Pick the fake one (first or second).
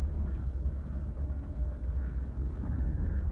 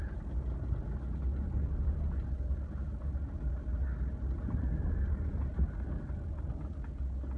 first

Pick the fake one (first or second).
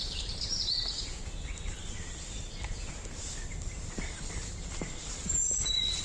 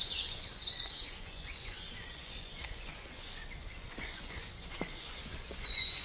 second